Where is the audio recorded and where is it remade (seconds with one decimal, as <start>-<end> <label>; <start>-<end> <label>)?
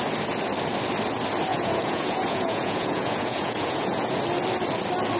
0.0-1.5 recorded; 1.5-4.2 remade; 4.2-5.2 recorded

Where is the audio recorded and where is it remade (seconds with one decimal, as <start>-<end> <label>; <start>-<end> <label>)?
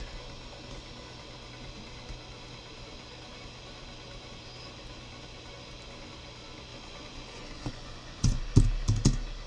0.0-6.7 recorded; 6.7-8.4 remade; 8.4-9.5 recorded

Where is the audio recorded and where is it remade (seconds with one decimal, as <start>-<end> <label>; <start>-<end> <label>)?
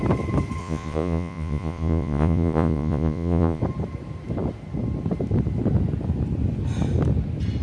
0.0-0.6 recorded; 0.6-3.6 remade; 3.6-7.6 recorded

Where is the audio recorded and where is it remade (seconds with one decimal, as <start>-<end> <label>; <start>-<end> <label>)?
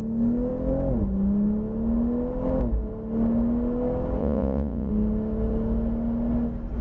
0.0-4.2 recorded; 4.2-4.9 remade; 4.9-6.8 recorded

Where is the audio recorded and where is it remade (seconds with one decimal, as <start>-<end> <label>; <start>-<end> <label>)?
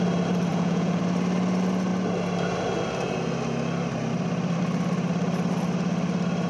0.0-0.5 recorded; 0.5-1.0 remade; 1.0-6.5 recorded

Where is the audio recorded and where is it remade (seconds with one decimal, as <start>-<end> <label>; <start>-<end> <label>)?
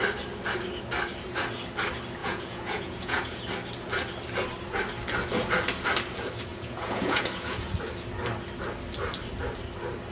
0.0-2.2 recorded; 2.2-3.4 remade; 3.4-6.5 recorded; 6.5-7.7 remade; 7.7-10.1 recorded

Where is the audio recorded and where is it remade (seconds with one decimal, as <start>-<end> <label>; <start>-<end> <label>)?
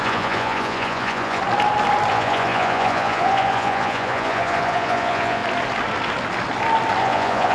0.0-1.4 remade; 1.4-2.1 recorded; 2.1-5.4 remade; 5.4-7.0 recorded; 7.0-7.5 remade